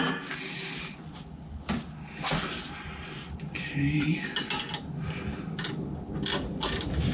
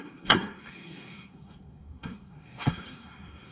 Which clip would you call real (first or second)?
first